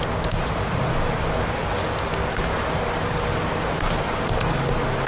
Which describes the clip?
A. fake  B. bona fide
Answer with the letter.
B